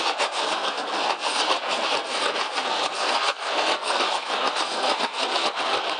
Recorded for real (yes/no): no